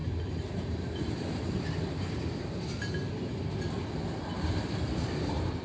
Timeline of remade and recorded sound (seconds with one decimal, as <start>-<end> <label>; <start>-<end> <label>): 0.0-5.6 recorded